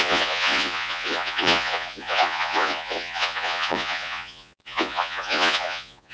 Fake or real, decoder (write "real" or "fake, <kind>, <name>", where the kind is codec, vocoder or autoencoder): fake, vocoder, Vocos